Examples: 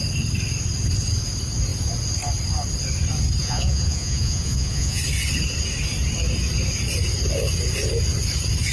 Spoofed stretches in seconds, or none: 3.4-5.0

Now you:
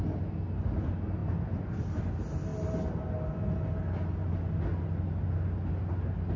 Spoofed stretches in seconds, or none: 1.2-2.0

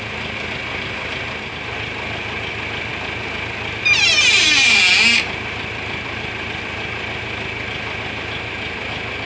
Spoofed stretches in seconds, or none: none

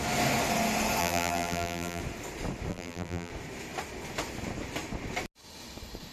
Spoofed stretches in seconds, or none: 1.0-2.0; 2.7-3.3

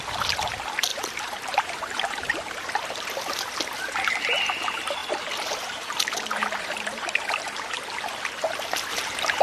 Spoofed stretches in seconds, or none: 0.9-3.3; 5.0-7.2; 8.9-9.4

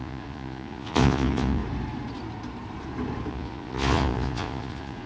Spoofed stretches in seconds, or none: 0.0-1.6; 3.3-5.1